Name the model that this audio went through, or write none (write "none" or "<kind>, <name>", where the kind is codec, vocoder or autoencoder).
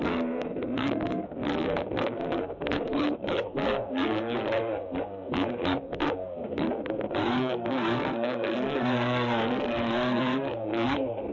codec, SNAC